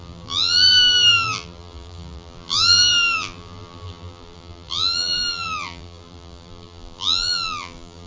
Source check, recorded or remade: remade